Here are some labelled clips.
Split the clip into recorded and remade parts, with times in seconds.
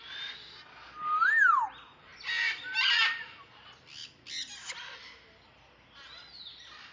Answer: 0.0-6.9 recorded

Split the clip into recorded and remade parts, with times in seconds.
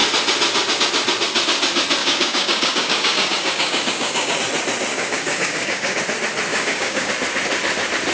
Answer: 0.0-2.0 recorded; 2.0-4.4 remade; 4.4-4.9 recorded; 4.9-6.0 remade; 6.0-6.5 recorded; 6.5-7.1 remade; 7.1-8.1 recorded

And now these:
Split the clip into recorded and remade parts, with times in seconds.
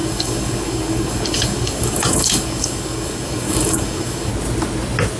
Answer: 0.0-4.3 remade; 4.3-5.2 recorded